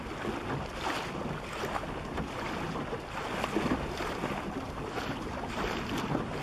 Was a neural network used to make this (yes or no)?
no